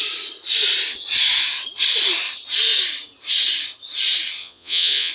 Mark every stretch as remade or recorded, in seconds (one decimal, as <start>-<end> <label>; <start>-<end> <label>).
0.0-4.4 recorded; 4.4-5.1 remade